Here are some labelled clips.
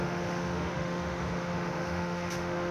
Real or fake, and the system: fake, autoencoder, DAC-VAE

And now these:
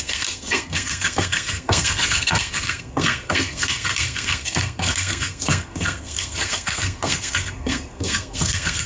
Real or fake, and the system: fake, codec, SNAC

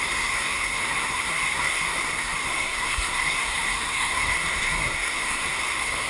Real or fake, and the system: fake, codec, SNAC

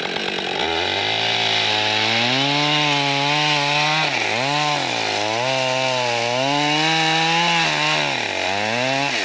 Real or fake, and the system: real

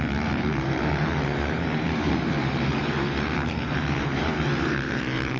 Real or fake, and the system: fake, vocoder, BigVGAN v2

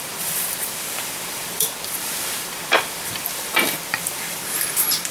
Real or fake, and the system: fake, vocoder, BigVGAN v2